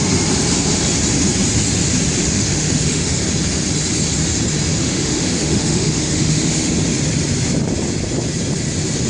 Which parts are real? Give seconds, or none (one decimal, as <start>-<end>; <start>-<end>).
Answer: 0.0-2.2; 3.2-4.7; 6.7-9.1